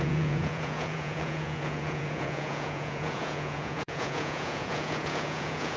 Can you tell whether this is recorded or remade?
remade